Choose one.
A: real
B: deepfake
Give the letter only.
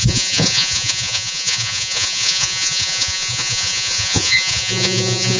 B